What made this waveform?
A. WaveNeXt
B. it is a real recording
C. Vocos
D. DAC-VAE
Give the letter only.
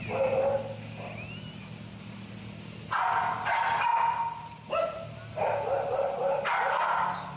B